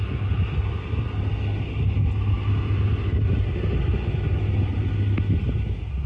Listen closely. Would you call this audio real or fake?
real